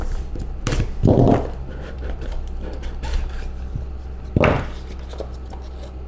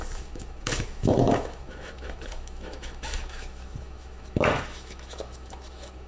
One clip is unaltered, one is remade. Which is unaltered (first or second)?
first